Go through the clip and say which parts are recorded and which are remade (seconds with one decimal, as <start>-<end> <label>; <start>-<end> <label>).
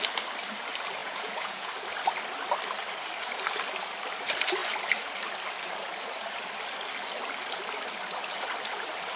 0.0-1.0 recorded; 1.0-1.7 remade; 1.7-9.2 recorded